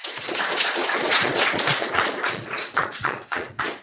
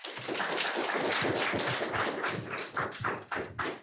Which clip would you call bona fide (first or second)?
second